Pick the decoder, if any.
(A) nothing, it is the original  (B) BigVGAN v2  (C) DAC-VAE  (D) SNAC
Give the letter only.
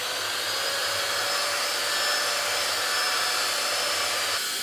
A